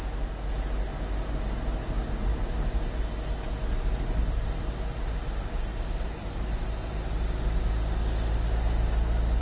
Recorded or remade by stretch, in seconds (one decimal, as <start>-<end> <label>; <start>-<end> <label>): 0.0-9.4 recorded